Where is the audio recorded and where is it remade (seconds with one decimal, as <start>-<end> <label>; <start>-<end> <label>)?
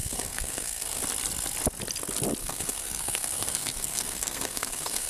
0.0-1.0 remade; 1.0-2.4 recorded; 2.4-5.1 remade